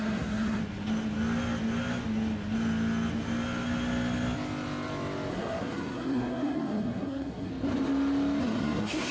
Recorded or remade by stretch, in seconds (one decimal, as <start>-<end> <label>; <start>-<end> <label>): 0.0-0.6 remade; 0.6-5.3 recorded; 5.3-7.5 remade; 7.5-8.4 recorded; 8.4-9.1 remade